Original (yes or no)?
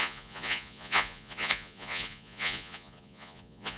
no